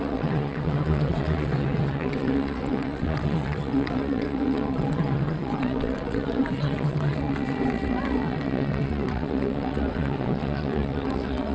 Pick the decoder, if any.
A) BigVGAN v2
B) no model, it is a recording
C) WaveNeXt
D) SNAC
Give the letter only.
C